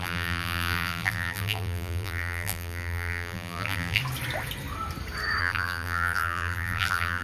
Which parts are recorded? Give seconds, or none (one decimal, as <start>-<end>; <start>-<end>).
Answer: 4.0-5.4